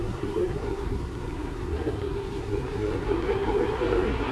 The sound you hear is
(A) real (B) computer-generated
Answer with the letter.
B